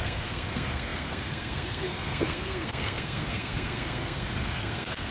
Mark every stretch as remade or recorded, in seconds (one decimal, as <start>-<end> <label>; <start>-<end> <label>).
0.0-5.1 remade